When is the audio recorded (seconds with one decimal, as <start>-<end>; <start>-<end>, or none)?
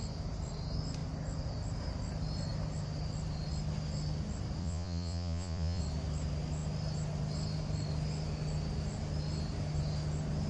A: 0.0-4.6; 5.8-10.5